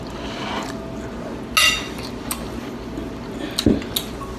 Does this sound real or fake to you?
real